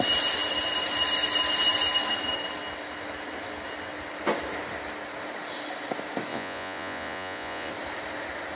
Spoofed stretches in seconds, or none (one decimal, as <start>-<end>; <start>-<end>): 6.3-7.7